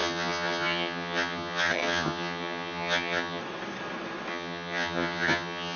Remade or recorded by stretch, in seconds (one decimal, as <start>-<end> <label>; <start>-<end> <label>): 0.0-3.4 remade; 3.4-4.3 recorded; 4.3-5.8 remade